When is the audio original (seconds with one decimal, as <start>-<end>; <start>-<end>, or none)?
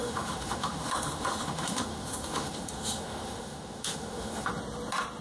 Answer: 4.5-5.2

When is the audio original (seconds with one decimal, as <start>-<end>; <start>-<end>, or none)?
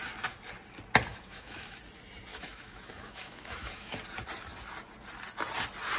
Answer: 0.0-1.1; 1.8-2.3; 3.9-6.0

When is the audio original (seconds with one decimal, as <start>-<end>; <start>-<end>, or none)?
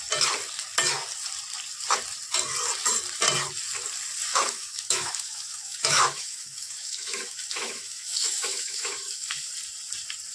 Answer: 0.0-4.3; 9.5-10.3